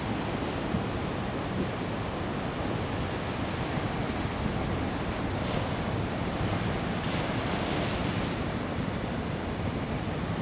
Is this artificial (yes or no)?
no